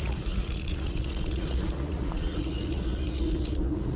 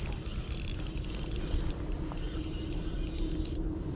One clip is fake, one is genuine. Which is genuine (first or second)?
second